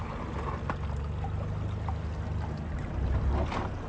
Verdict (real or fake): real